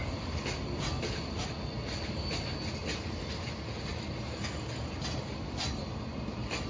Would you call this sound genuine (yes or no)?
yes